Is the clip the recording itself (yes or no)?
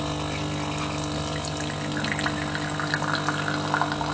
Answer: yes